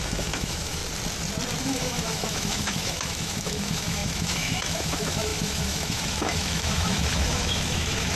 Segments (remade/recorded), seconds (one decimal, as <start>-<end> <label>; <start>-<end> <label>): 0.0-0.8 remade; 0.8-1.6 recorded; 1.6-8.2 remade